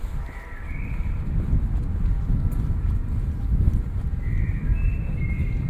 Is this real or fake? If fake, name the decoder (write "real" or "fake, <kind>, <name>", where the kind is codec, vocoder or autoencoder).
real